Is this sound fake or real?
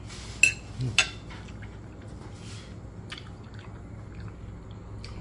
real